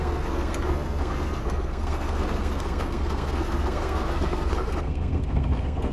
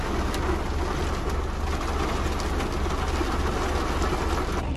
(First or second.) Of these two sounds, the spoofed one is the first